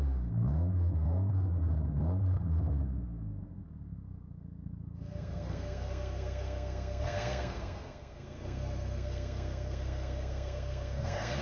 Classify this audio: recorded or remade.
remade